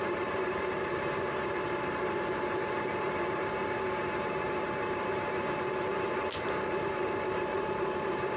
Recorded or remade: remade